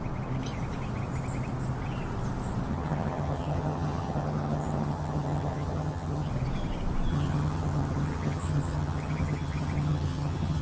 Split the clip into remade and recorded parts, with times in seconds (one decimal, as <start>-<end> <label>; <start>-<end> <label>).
0.0-2.7 recorded; 2.7-6.3 remade; 6.3-7.1 recorded; 7.1-10.6 remade